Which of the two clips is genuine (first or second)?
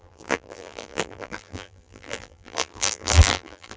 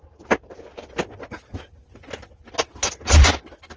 second